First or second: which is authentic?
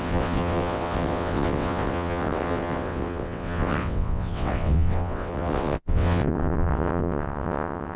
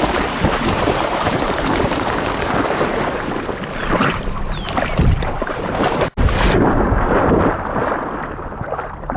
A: second